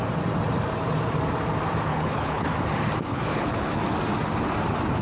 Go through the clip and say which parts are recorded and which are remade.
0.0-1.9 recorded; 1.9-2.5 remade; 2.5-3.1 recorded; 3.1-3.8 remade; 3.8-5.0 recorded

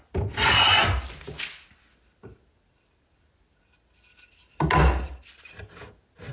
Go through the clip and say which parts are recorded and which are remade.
0.0-6.3 recorded

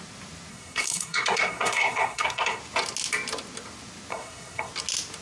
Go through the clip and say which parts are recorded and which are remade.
0.0-0.5 recorded; 0.5-2.6 remade; 2.6-4.1 recorded; 4.1-4.7 remade; 4.7-5.2 recorded

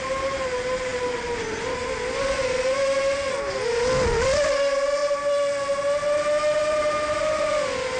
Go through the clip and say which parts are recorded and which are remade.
0.0-6.6 recorded; 6.6-7.5 remade; 7.5-8.0 recorded

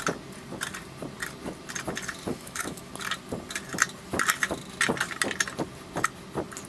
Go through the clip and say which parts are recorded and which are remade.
0.0-2.3 recorded; 2.3-2.9 remade; 2.9-6.7 recorded